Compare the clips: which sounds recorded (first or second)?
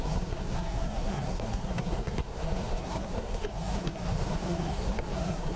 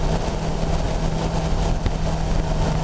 second